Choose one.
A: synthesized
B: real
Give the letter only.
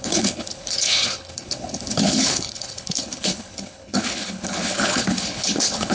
A